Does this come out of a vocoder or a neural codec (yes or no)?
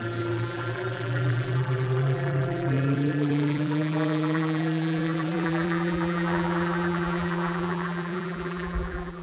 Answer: yes